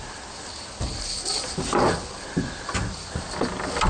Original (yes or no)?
yes